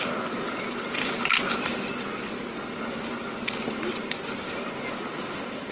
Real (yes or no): yes